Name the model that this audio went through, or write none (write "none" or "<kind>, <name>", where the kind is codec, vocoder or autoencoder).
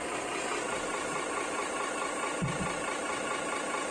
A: none